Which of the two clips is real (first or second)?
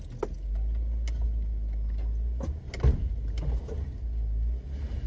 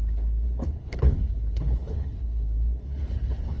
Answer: first